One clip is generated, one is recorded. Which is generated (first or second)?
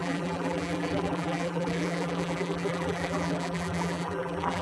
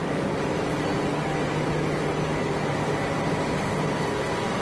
first